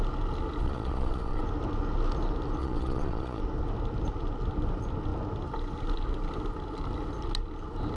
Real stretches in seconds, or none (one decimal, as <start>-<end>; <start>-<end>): 0.0-0.6; 1.4-2.6; 3.4-8.0